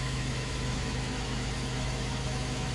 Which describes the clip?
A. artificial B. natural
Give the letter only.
A